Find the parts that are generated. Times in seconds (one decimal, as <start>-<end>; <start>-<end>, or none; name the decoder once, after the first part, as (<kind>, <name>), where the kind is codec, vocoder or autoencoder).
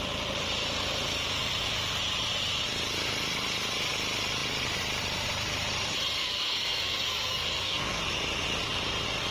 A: 6.2-8.0 (codec, SNAC)